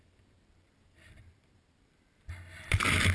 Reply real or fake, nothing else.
fake